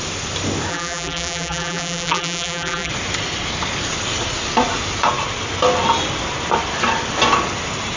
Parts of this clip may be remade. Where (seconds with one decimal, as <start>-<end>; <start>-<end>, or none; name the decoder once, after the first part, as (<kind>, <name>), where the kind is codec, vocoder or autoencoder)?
0.7-2.9 (vocoder, BigVGAN v2)